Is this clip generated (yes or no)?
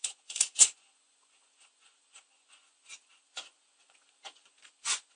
yes